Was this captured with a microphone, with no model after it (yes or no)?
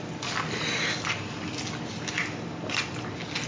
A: yes